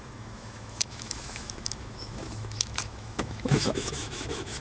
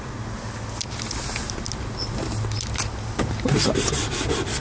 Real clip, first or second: second